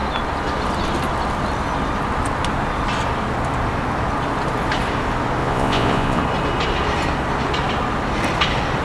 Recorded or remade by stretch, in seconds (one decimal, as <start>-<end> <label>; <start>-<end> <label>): 0.0-5.4 recorded; 5.4-6.2 remade; 6.2-8.8 recorded